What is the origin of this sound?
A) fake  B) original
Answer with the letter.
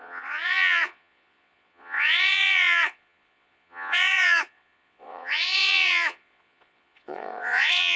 A